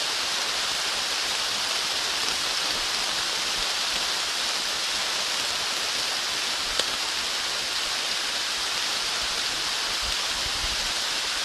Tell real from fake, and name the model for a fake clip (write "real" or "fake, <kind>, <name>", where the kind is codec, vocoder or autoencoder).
real